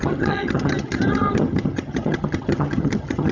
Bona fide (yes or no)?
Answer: no